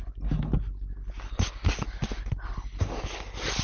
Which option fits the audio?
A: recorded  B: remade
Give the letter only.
A